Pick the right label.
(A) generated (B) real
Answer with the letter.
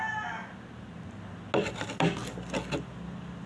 B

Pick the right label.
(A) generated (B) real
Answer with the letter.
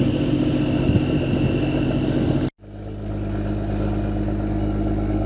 B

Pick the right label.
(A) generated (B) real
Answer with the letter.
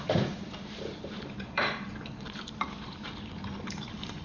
A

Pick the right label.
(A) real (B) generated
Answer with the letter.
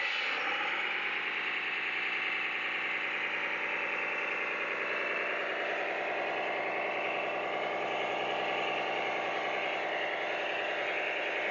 B